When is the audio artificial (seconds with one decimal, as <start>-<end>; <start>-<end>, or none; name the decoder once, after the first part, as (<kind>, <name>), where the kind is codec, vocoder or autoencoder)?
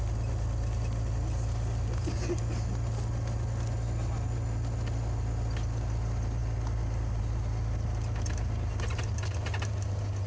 none